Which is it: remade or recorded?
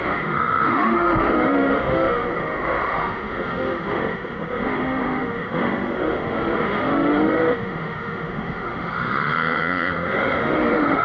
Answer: remade